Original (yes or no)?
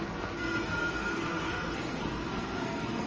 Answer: no